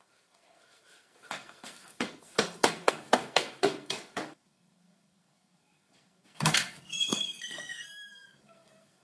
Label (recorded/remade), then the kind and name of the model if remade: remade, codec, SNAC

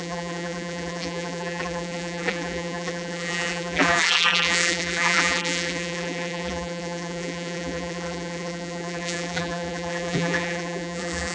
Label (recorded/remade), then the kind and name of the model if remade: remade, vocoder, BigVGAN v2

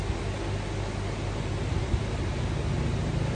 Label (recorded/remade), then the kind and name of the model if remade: recorded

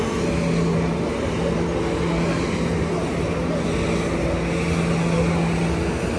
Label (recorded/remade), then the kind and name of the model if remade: recorded